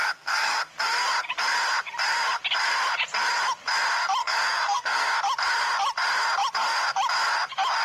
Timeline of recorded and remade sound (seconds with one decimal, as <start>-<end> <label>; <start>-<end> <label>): 0.0-0.6 remade; 0.6-4.2 recorded; 4.2-5.2 remade; 5.2-7.8 recorded